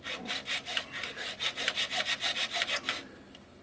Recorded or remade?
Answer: recorded